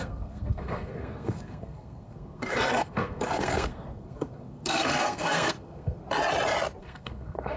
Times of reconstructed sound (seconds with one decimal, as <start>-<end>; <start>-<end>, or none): 0.0-6.0; 6.8-7.6